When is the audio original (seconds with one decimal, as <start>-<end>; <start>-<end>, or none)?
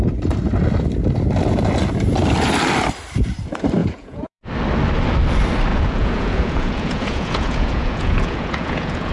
0.0-3.8; 4.4-5.7